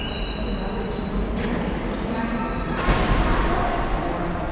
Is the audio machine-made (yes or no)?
no